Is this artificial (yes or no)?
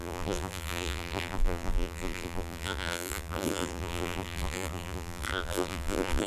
yes